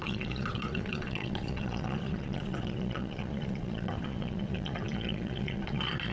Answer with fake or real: fake